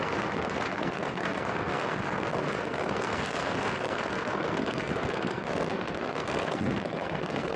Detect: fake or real fake